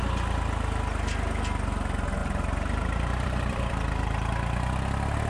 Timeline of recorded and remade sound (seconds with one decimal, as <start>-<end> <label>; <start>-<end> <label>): 0.0-2.2 recorded; 2.2-3.7 remade; 3.7-5.3 recorded